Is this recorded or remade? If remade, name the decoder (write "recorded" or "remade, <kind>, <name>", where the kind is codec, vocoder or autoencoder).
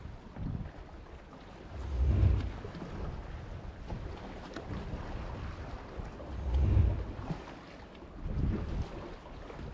recorded